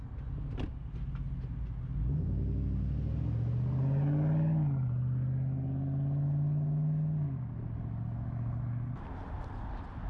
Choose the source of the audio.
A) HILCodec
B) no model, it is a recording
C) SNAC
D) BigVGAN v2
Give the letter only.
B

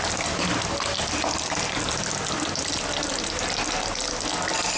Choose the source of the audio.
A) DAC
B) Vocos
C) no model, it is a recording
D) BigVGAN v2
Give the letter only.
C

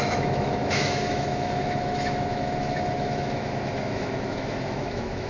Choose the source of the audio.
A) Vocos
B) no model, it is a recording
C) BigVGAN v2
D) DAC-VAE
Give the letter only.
D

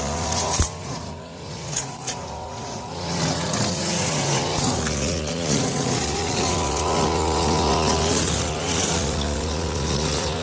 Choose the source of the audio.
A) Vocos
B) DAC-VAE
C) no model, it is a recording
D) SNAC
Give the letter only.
A